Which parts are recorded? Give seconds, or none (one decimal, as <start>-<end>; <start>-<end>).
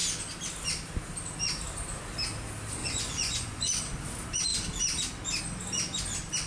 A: 0.0-2.8; 3.8-6.5